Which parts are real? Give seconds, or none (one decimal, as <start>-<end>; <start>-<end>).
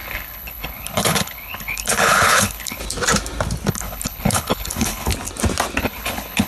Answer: 2.8-3.7; 5.1-5.8